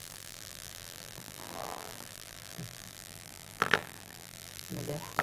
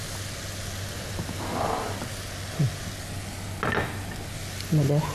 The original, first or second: second